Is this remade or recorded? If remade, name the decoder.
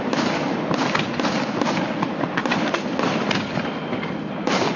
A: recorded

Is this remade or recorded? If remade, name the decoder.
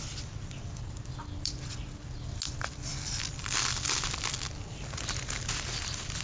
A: recorded